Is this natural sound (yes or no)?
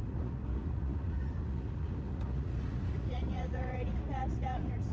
no